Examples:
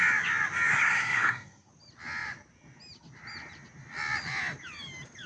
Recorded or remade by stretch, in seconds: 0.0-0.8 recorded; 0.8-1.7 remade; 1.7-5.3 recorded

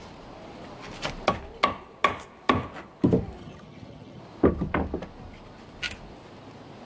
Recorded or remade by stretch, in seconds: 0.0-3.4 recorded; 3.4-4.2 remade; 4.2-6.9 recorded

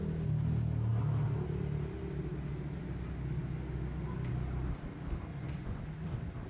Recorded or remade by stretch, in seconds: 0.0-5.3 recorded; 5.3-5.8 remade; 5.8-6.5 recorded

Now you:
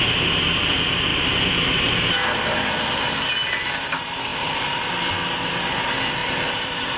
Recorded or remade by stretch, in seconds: 0.0-1.1 recorded; 1.1-2.7 remade; 2.7-4.3 recorded; 4.3-4.9 remade; 4.9-6.2 recorded; 6.2-7.0 remade